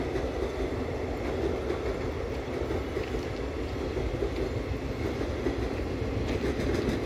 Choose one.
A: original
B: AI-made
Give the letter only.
A